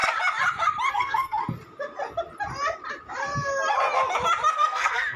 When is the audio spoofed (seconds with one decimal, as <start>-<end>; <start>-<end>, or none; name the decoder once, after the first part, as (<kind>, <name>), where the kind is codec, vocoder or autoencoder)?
0.9-1.4 (codec, SNAC); 4.5-5.2